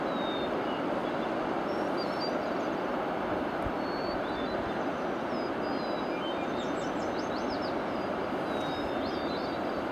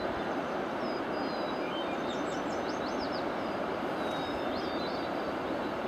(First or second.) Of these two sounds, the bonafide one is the first